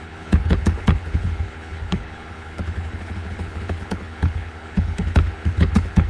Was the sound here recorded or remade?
remade